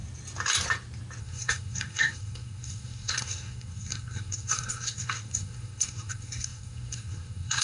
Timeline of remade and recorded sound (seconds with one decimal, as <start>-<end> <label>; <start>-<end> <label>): 0.0-1.2 recorded; 1.2-7.6 remade